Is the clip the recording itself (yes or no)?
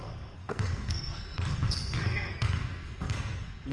no